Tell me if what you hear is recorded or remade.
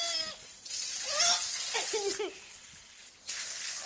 recorded